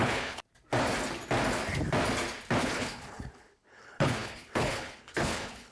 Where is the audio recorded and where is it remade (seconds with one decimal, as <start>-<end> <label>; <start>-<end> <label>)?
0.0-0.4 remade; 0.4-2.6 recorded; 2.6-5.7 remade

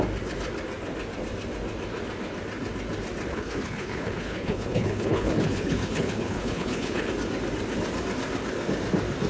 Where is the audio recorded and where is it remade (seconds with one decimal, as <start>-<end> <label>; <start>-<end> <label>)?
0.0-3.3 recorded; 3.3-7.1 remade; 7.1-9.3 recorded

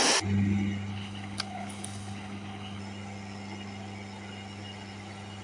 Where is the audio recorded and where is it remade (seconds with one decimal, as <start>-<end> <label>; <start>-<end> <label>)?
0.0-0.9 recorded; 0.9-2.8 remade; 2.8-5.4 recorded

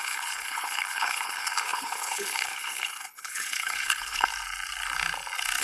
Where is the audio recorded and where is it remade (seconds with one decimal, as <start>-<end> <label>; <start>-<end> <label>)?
0.0-4.3 remade; 4.3-5.6 recorded

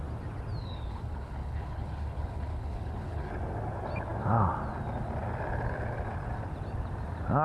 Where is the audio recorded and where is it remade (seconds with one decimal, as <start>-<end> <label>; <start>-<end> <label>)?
0.0-0.6 recorded; 0.6-3.3 remade; 3.3-7.4 recorded

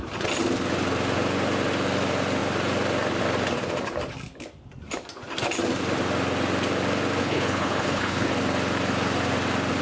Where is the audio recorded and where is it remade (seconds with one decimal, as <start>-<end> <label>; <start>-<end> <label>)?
0.0-7.2 recorded; 7.2-8.3 remade; 8.3-9.8 recorded